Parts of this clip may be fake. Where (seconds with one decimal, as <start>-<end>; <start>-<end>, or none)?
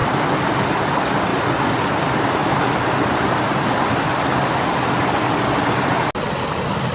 none